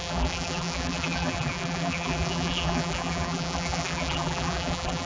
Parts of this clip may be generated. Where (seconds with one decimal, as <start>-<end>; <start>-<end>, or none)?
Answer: 0.0-5.1

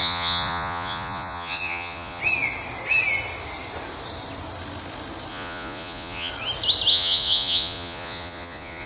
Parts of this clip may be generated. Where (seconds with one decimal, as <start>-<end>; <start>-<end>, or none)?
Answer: 0.0-2.2; 5.3-6.3; 6.9-8.9

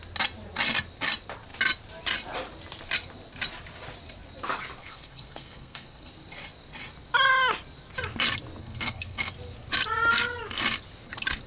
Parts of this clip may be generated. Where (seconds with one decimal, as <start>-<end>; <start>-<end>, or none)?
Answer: 4.8-6.1; 8.6-9.3

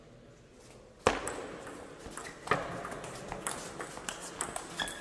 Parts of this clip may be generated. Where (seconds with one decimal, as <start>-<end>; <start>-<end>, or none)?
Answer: none